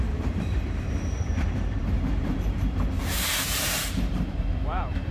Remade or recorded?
remade